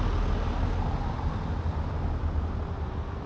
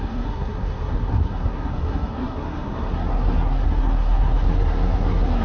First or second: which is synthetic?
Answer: second